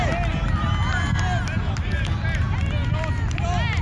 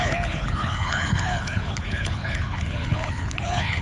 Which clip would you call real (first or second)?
first